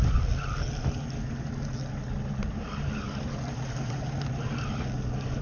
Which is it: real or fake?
real